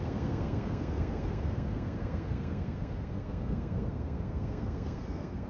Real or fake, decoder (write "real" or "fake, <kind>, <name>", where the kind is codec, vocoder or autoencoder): fake, codec, SNAC